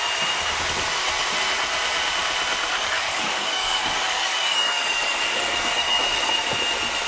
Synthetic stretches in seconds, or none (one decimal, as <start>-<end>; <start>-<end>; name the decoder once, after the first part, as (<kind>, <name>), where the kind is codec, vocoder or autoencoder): 2.7-6.3 (codec, DAC)